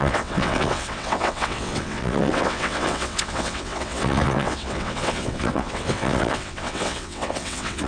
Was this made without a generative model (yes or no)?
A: no